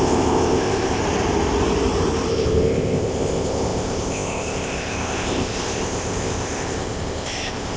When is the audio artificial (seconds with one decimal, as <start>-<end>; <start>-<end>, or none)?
0.0-1.0; 2.3-7.8